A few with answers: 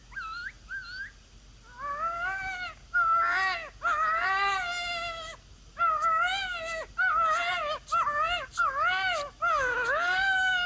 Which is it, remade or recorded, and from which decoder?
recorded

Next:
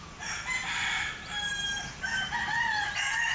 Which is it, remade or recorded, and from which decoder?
recorded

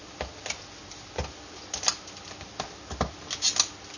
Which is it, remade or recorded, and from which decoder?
recorded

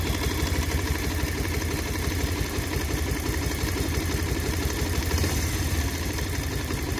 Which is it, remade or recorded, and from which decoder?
remade, vocoder, BigVGAN v2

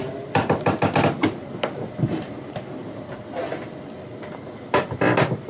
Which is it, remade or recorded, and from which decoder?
recorded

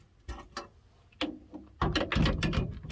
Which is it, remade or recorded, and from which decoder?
recorded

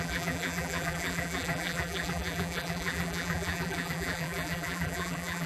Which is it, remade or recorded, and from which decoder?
remade, vocoder, BigVGAN v2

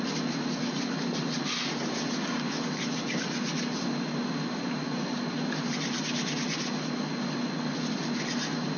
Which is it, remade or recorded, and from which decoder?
recorded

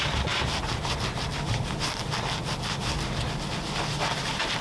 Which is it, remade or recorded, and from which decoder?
recorded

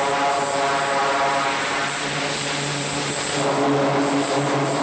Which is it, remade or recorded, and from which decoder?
recorded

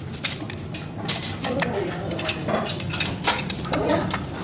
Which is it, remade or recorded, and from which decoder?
recorded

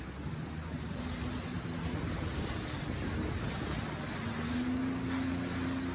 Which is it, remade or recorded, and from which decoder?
recorded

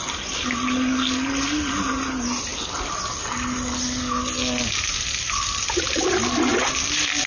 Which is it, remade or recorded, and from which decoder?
recorded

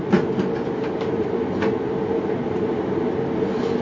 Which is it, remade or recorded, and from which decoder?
recorded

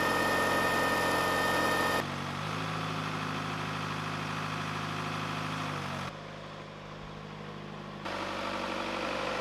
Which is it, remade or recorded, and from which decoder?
recorded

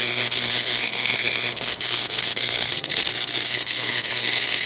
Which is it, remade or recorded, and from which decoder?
remade, codec, SNAC